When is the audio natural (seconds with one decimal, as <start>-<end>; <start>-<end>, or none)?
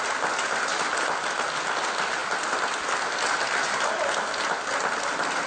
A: 0.0-5.5